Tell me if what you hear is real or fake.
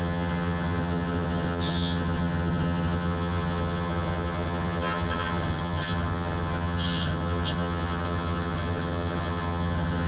fake